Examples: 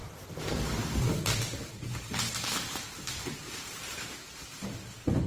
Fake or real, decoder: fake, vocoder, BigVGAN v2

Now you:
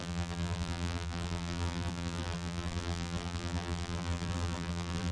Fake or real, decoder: fake, vocoder, BigVGAN v2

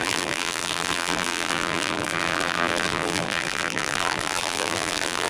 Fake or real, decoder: fake, vocoder, BigVGAN v2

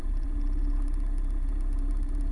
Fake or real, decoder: fake, vocoder, BigVGAN v2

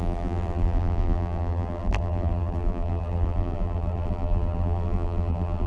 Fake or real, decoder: fake, vocoder, BigVGAN v2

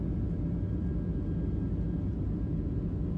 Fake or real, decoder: real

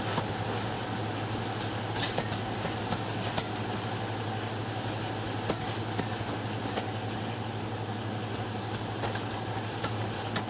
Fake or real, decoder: fake, vocoder, BigVGAN v2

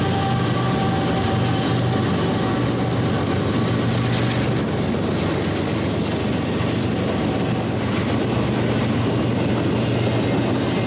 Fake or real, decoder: real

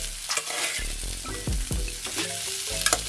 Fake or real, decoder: real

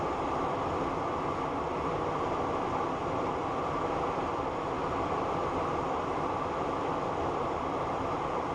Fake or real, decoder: fake, vocoder, BigVGAN v2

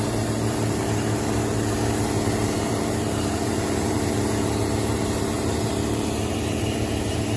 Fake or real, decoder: fake, vocoder, BigVGAN v2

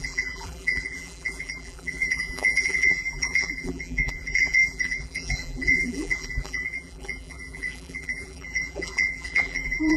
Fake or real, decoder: fake, vocoder, BigVGAN v2